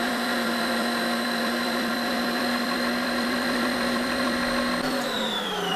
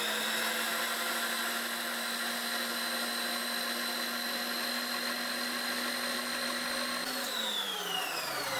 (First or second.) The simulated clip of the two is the first